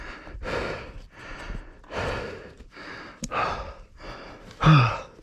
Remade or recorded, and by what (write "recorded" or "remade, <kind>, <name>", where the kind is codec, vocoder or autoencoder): recorded